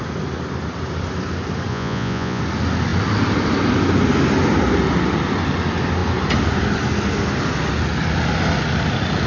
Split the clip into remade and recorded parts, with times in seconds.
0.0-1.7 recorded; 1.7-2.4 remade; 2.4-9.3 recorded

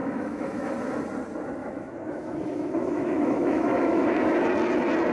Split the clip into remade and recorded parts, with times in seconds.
0.0-0.7 remade; 0.7-1.6 recorded; 1.6-4.4 remade; 4.4-5.1 recorded

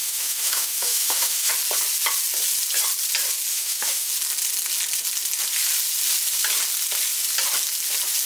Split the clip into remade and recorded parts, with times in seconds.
0.0-1.5 remade; 1.5-3.5 recorded; 3.5-4.1 remade; 4.1-8.3 recorded